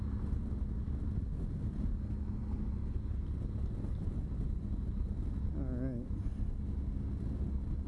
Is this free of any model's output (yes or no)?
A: yes